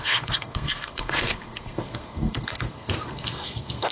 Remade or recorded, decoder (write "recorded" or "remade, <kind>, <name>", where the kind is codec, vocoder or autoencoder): remade, codec, SNAC